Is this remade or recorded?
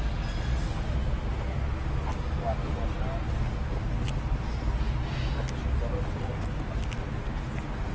recorded